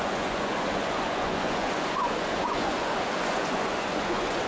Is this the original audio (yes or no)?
no